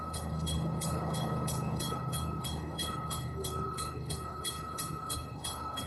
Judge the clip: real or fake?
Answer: fake